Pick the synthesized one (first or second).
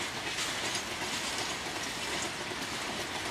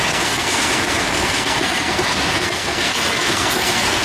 second